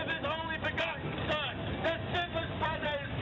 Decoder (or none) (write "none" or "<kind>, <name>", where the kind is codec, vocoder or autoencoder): none